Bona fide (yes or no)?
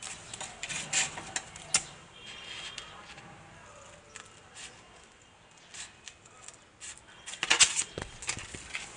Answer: yes